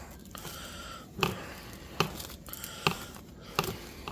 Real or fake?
real